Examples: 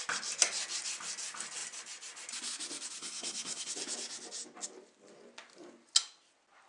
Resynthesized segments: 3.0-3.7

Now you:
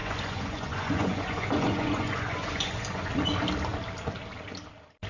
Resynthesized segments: 0.0-3.1

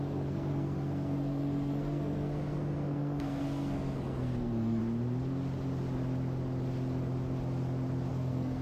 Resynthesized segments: 0.0-4.8; 8.1-8.6

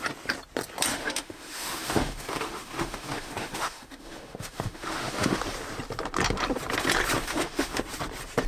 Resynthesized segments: 0.9-5.4; 7.2-7.8